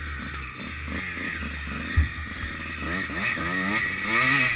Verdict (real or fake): real